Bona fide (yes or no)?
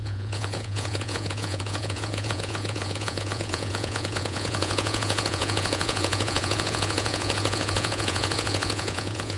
no